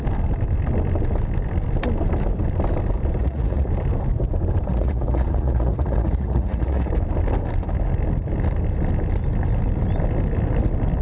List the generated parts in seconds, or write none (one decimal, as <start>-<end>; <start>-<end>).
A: 3.2-3.7; 4.7-6.9